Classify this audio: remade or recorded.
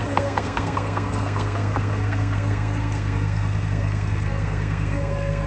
remade